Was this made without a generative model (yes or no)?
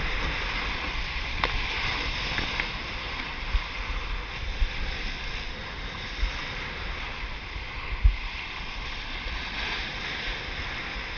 yes